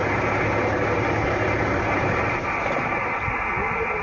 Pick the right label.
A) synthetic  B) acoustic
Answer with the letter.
B